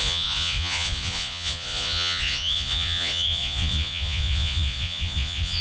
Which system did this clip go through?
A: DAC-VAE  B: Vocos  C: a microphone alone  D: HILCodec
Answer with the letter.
B